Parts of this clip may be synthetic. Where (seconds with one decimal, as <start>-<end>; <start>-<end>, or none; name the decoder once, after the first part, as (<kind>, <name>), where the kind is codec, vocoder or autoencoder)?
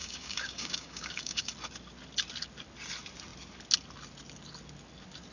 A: 0.0-1.5 (codec, DAC)